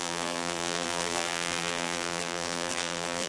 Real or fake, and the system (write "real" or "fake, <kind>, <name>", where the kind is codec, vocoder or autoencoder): fake, vocoder, BigVGAN v2